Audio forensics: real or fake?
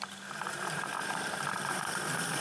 fake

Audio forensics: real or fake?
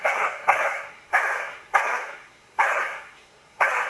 fake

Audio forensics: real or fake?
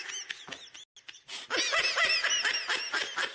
real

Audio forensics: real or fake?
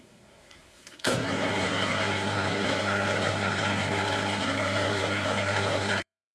fake